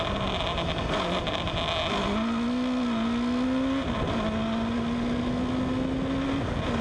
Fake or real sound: real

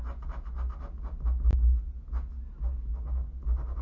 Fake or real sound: real